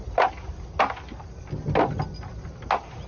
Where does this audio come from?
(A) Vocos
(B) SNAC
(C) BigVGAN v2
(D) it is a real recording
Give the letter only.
D